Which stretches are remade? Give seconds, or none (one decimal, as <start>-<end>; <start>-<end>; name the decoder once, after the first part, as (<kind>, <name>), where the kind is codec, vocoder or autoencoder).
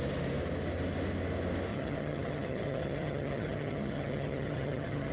1.7-5.1 (vocoder, HiFi-GAN)